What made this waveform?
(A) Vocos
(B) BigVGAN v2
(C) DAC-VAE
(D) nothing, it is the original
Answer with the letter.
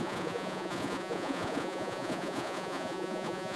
A